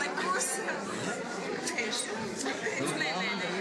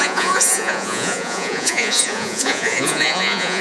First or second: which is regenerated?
second